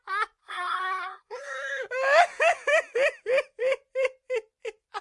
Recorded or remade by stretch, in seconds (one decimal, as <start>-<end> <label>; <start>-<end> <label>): 0.0-0.4 recorded; 0.4-1.8 remade; 1.8-5.0 recorded